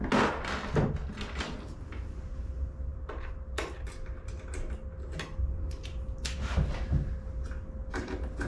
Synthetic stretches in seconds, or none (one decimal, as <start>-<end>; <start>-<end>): none

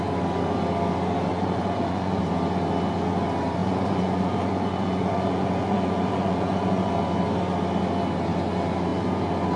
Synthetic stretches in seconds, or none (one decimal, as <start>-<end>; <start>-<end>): 1.3-2.2; 3.6-6.9

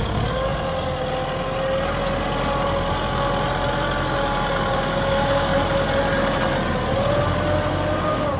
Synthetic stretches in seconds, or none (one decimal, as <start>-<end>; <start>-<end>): 0.0-0.5; 4.7-5.5; 8.0-8.4

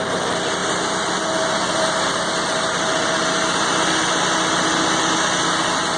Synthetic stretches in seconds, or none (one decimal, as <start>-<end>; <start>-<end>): none

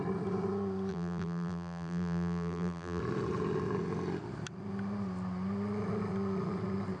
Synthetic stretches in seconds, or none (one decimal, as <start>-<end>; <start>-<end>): 0.9-3.0

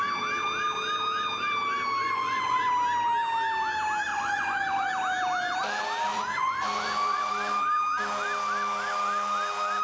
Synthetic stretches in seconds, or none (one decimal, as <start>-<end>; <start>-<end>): 2.0-2.7; 4.1-4.9; 6.1-7.3